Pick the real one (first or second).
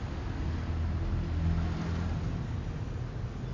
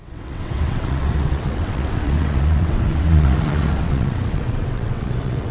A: first